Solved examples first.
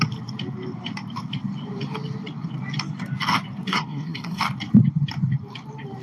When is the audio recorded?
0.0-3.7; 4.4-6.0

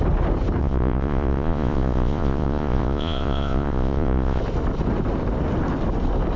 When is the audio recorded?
0.0-0.6; 4.4-6.4

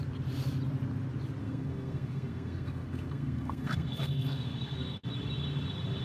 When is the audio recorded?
0.0-1.4; 5.0-6.0

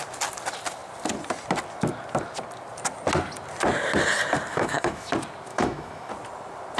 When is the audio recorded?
0.0-4.5; 5.1-5.5; 6.1-6.8